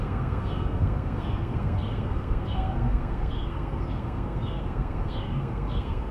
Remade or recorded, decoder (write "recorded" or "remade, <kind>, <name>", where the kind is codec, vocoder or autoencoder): remade, codec, SNAC